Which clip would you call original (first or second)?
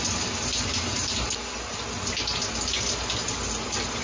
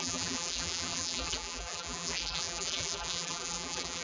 first